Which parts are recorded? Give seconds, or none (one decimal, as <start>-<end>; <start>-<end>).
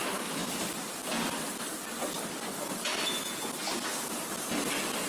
0.5-5.1